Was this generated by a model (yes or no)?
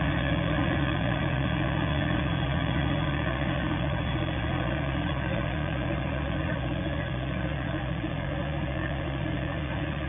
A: yes